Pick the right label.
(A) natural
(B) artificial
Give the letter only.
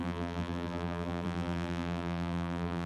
B